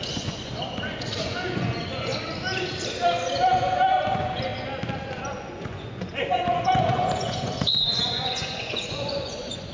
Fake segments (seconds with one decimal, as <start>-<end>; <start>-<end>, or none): 0.0-2.1; 4.0-4.5; 5.3-9.7